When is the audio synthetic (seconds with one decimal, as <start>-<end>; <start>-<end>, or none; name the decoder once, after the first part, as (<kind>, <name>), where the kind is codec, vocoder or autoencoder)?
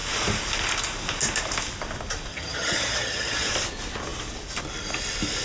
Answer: 2.3-3.5 (vocoder, HiFi-GAN)